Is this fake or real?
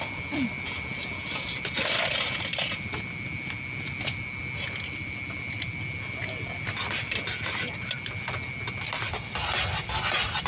real